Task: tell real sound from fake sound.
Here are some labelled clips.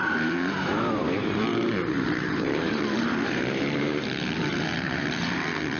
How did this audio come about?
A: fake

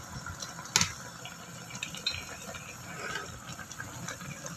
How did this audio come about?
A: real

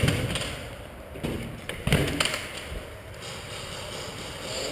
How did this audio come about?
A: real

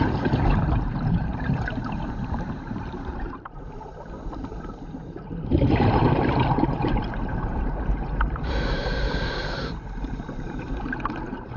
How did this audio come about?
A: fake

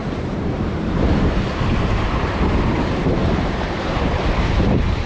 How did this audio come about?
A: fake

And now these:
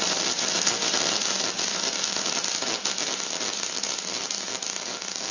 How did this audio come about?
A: fake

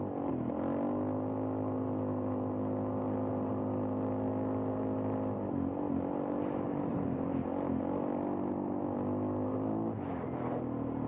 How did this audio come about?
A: fake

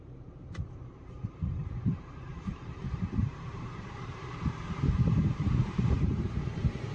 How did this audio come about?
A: fake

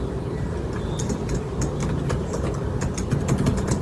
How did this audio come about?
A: real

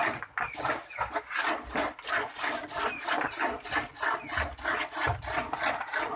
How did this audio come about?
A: fake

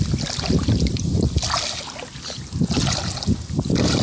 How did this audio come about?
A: fake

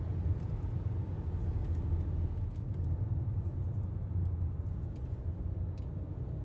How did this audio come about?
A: real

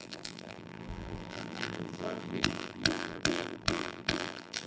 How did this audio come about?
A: fake